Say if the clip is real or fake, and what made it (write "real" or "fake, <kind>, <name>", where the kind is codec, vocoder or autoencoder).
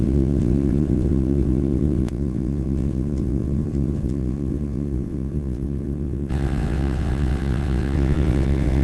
fake, vocoder, WaveNeXt